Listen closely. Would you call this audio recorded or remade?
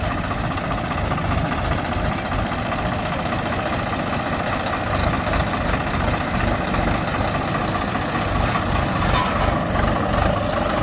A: recorded